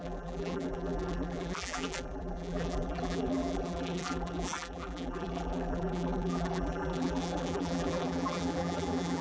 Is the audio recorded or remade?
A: remade